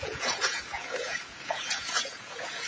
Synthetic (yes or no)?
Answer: yes